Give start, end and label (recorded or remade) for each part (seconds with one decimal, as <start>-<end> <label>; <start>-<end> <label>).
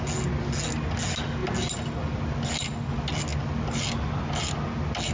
0.0-5.1 recorded